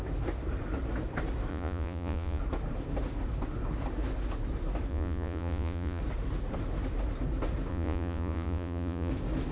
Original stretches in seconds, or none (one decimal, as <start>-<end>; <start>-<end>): 0.0-1.5; 2.4-4.9; 6.0-7.7; 9.1-9.5